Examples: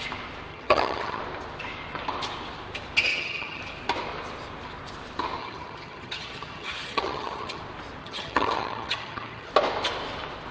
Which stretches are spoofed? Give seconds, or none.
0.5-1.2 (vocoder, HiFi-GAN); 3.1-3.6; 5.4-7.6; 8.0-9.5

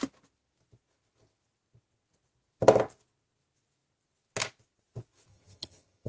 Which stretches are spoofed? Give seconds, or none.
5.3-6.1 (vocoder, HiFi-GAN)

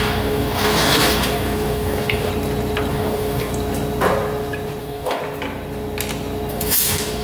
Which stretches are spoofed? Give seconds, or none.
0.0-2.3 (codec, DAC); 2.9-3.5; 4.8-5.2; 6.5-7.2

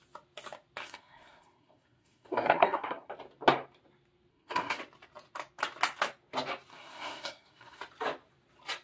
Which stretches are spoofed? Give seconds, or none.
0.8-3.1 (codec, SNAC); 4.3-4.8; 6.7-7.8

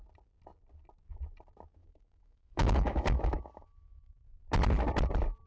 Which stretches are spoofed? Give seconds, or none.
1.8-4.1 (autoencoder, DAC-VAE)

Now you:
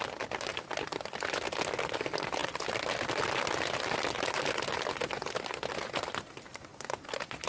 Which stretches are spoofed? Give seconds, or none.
none

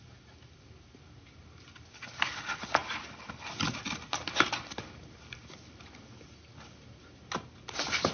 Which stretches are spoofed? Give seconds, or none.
2.8-3.3 (vocoder, BigVGAN v2)

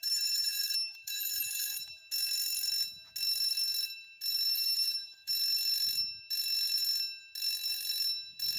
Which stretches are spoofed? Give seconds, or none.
0.0-2.0 (autoencoder, DAC-VAE); 4.5-5.3